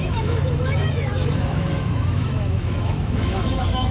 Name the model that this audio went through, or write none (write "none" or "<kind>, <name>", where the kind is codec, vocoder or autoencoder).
autoencoder, DAC-VAE